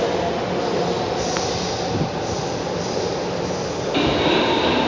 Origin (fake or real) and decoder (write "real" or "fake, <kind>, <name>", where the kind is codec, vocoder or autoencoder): real